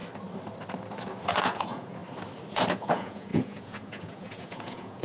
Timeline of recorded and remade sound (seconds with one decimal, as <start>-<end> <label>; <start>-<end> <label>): 0.0-1.4 recorded; 1.4-2.0 remade; 2.0-2.7 recorded; 2.7-5.0 remade